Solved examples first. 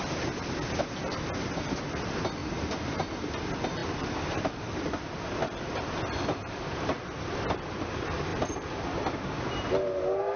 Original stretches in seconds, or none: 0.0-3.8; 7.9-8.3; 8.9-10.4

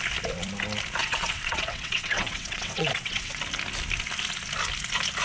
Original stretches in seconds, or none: 0.0-1.0; 3.4-5.2

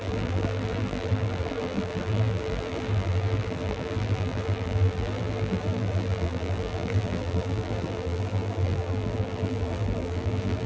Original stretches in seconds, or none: none

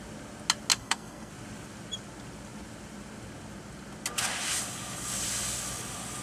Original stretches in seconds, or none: 0.0-0.7; 1.3-6.2

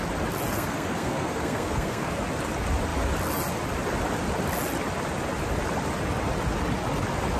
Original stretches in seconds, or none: 0.0-0.5; 2.1-7.4